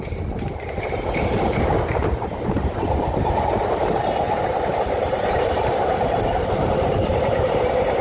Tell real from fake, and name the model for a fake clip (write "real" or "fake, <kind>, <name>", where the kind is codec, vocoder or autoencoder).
fake, vocoder, BigVGAN v2